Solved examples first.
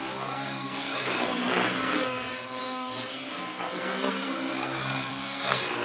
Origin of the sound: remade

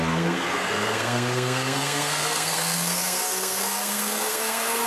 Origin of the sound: remade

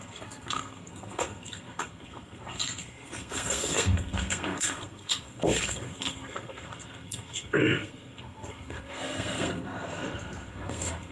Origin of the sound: remade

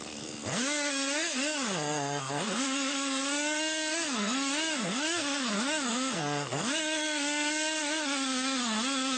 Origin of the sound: remade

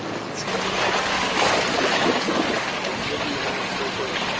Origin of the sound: recorded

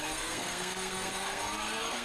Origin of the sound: remade